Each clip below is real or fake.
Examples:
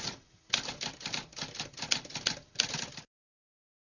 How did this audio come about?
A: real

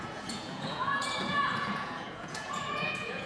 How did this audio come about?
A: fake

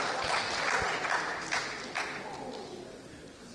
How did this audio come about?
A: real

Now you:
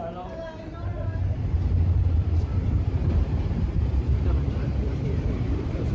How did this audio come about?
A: fake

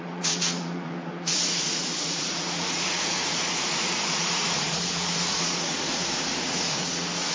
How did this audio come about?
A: fake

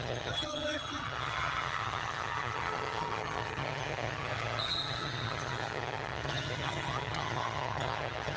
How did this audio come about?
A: fake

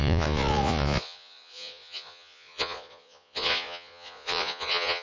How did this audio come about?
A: fake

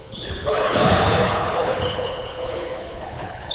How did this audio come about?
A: fake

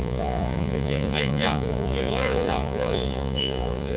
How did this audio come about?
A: fake